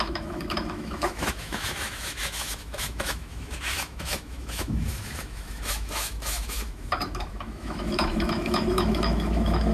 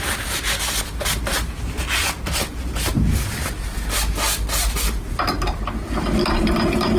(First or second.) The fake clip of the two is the first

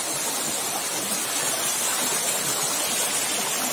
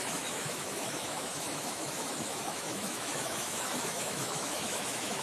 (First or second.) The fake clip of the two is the second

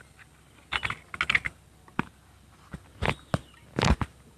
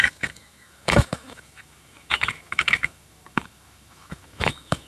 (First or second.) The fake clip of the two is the second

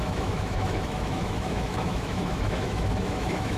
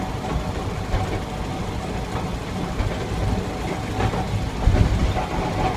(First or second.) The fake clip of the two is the first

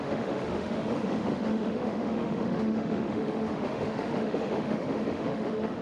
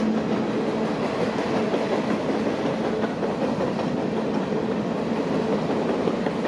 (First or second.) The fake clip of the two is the first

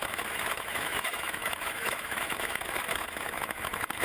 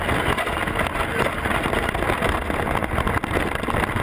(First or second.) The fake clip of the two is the first